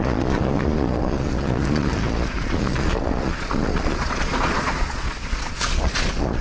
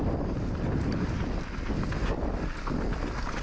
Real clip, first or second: second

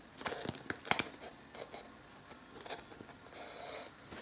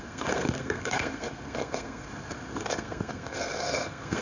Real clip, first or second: first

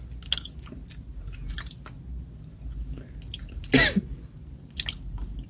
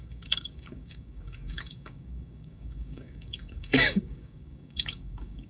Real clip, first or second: first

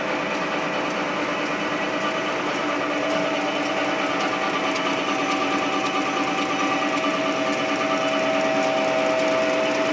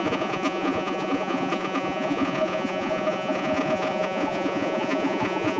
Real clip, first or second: first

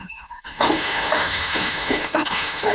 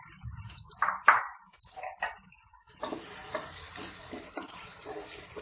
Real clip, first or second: second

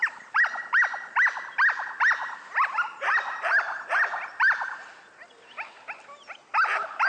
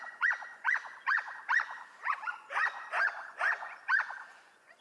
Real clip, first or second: first